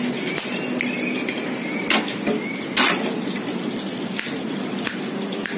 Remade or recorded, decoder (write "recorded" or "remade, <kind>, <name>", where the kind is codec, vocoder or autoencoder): recorded